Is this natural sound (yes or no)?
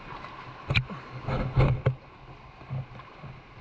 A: yes